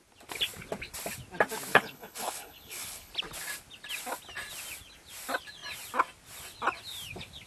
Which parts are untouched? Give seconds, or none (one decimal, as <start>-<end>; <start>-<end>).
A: 0.0-1.7; 3.1-7.5